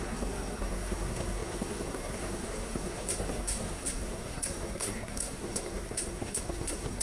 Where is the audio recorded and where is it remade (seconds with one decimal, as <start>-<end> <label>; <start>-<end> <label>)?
0.0-7.0 remade